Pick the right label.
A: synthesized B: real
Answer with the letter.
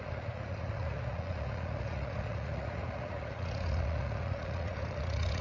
A